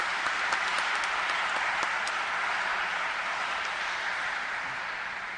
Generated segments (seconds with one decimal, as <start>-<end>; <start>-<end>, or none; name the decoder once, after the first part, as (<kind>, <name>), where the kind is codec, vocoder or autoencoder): none

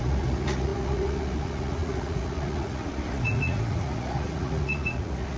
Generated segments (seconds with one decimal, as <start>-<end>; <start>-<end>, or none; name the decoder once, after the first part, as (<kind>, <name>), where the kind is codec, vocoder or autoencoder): 0.0-5.4 (vocoder, Vocos)

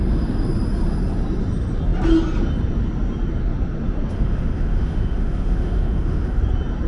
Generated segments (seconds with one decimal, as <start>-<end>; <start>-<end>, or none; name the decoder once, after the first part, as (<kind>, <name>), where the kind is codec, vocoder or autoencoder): 4.1-6.4 (autoencoder, DAC-VAE)

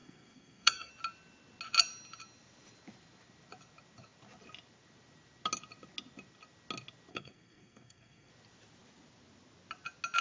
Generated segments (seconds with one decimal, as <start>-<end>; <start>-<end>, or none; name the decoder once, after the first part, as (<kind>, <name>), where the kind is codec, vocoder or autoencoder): 0.0-0.9 (codec, SNAC); 7.1-8.3

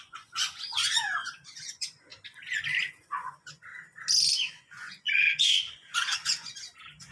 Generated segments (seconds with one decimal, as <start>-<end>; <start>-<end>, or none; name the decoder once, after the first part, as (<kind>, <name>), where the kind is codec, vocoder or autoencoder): 0.0-2.1 (vocoder, Vocos); 2.9-3.7; 4.5-7.1

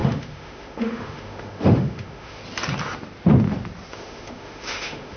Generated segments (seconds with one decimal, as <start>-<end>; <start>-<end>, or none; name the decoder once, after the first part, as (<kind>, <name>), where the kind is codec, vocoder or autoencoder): 0.0-2.4 (autoencoder, DAC-VAE); 3.9-5.2